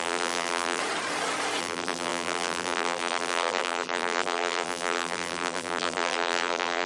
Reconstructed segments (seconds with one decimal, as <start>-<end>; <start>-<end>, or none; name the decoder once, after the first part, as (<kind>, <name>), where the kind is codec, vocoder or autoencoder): 0.0-0.8 (vocoder, BigVGAN v2); 1.6-6.9